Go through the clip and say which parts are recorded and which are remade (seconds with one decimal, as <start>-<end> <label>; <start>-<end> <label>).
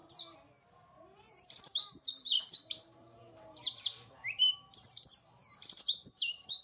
0.0-0.9 recorded; 0.9-6.6 remade